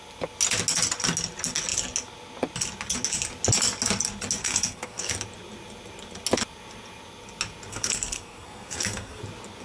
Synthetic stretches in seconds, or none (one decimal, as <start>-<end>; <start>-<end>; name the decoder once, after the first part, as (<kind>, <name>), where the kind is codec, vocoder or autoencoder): 4.4-5.1 (codec, SNAC); 7.7-9.2